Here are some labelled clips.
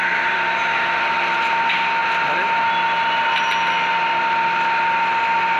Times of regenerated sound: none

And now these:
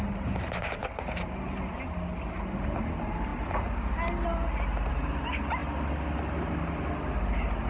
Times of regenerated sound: none

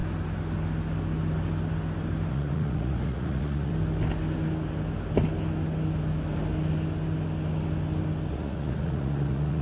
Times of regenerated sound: 2.3-3.7; 8.3-9.6

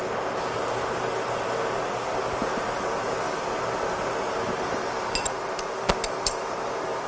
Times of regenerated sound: none

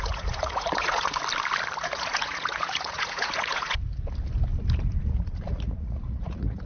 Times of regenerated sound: 0.0-1.2; 1.8-3.8; 5.0-6.7

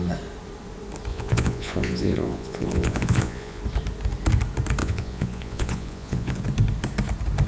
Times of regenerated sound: 1.1-3.6; 4.8-6.4

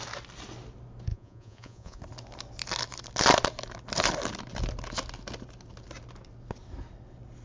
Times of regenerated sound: 1.1-2.0